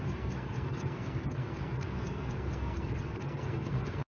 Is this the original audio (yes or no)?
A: no